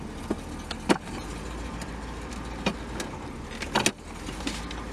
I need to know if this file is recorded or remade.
recorded